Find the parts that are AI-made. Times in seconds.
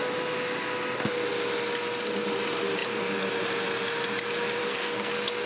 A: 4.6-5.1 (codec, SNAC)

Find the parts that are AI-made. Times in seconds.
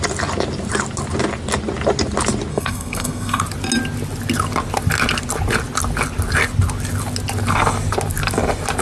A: 2.5-3.4 (codec, SNAC)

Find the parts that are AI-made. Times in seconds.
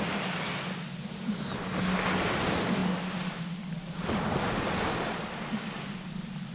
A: none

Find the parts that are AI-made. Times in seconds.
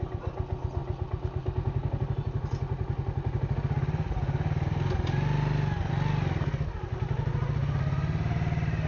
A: none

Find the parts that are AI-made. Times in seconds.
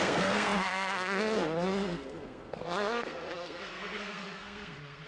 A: 0.0-5.1 (codec, SNAC)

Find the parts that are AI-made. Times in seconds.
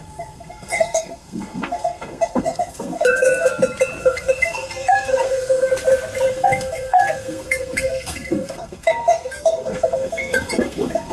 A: 0.0-3.5 (codec, SNAC); 4.0-5.7; 6.3-11.1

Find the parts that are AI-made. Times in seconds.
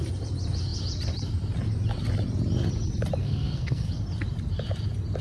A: 3.2-3.9 (codec, SNAC)